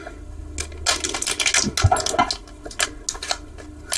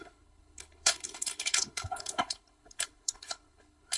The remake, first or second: second